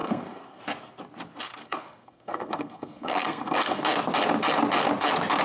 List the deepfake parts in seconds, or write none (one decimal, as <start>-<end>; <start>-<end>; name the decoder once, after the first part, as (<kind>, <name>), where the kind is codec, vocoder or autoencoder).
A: 0.0-0.6 (codec, SNAC); 1.6-3.8